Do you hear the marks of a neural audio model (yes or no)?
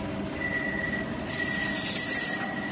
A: no